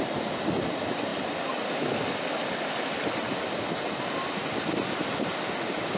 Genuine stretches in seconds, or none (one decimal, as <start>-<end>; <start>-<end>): 0.0-6.0